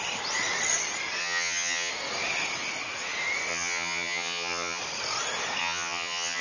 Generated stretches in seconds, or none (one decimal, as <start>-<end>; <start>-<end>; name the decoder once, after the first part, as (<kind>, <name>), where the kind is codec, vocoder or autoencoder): 1.2-1.9 (vocoder, HiFi-GAN); 3.5-4.8; 5.6-6.4